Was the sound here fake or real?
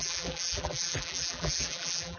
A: fake